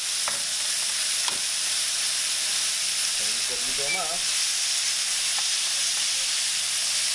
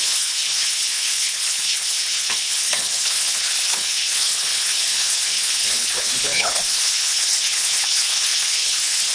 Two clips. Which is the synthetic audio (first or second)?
second